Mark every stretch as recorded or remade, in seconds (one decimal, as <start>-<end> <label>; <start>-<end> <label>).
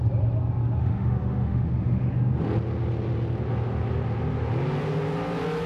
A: 0.0-0.8 recorded; 0.8-2.1 remade; 2.1-5.7 recorded